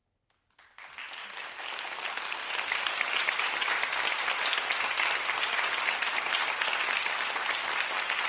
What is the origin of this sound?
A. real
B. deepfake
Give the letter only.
A